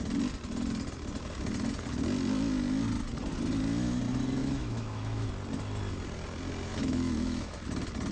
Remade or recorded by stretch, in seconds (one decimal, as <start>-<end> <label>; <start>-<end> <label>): 0.0-4.4 recorded; 4.4-5.3 remade; 5.3-6.7 recorded; 6.7-7.6 remade; 7.6-8.1 recorded